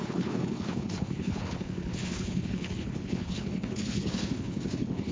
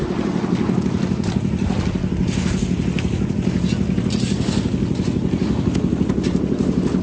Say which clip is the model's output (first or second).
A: first